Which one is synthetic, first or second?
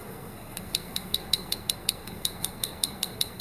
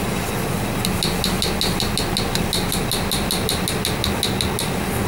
first